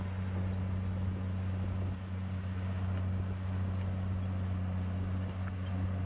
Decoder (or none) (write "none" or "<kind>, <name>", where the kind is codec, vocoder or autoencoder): none